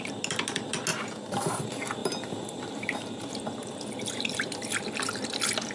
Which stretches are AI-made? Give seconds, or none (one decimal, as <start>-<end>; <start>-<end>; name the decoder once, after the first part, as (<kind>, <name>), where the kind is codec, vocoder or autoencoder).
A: 0.9-1.6 (vocoder, BigVGAN v2); 2.0-4.7